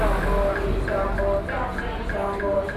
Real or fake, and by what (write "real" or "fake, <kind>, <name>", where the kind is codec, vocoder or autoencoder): real